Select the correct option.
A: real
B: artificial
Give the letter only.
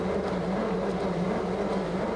A